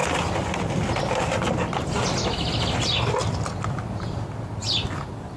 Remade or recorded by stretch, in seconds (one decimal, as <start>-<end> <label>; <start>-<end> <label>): 0.0-5.4 recorded